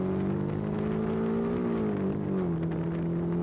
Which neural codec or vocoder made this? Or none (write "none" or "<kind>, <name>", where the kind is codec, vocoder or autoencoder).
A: none